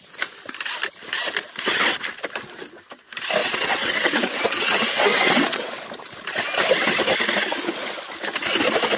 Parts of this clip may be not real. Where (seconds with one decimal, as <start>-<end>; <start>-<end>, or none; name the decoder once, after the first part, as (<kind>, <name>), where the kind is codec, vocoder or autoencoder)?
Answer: 3.4-5.8 (vocoder, WaveNeXt)